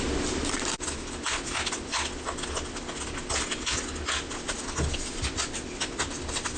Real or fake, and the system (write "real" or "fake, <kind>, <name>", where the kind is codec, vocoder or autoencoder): real